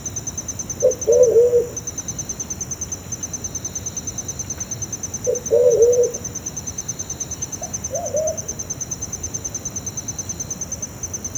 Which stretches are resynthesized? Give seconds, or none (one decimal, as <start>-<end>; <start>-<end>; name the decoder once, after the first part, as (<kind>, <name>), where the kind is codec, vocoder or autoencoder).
5.7-9.5 (vocoder, BigVGAN v2)